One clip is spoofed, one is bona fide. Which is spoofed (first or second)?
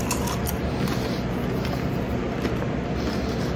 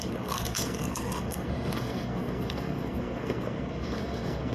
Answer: second